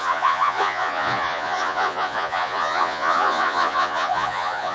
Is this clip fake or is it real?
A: fake